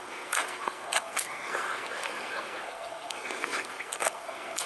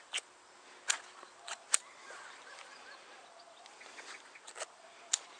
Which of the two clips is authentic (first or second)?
second